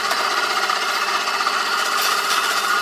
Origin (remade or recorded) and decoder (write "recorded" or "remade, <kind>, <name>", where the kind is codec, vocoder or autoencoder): recorded